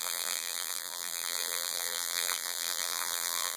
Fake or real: fake